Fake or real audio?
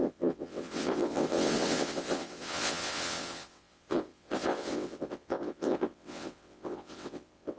fake